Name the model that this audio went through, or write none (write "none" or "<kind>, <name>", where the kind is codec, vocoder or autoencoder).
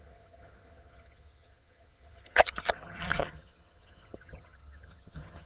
vocoder, HiFi-GAN